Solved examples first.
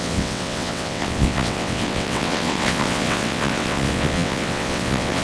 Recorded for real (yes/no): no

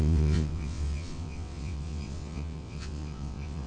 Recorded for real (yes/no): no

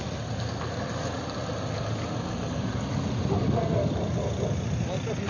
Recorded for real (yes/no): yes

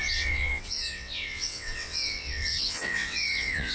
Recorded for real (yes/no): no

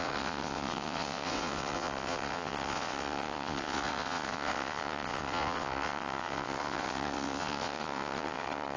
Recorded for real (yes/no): no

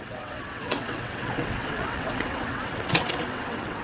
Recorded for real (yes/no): no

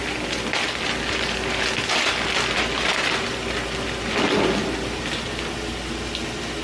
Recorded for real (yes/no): yes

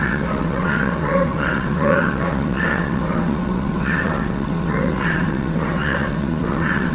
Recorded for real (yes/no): no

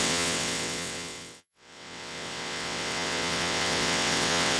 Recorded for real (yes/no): no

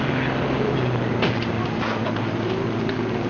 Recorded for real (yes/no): yes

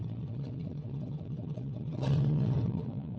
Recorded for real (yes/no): no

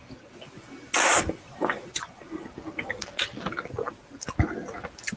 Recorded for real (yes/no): yes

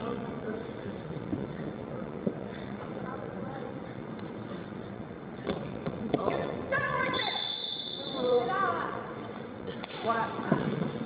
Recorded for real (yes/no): no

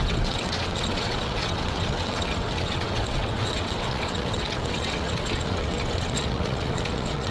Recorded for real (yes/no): no